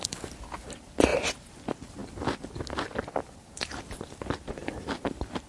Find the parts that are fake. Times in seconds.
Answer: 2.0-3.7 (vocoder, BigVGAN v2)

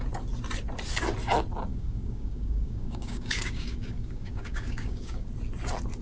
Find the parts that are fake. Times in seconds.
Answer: 1.7-5.3 (codec, DAC)

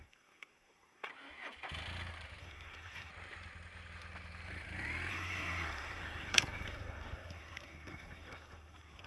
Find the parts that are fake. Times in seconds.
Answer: 0.0-1.1 (codec, SNAC); 2.4-3.1; 5.1-9.1

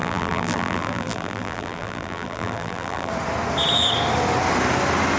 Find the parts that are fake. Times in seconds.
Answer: 0.0-3.1 (vocoder, BigVGAN v2)

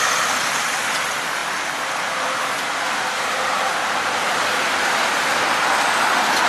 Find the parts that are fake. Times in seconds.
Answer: none

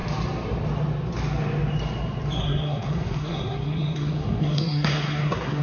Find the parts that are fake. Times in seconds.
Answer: 2.4-5.6 (codec, SNAC)

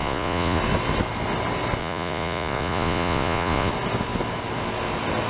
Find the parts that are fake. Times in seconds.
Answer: 0.0-0.6 (vocoder, Vocos); 1.8-3.7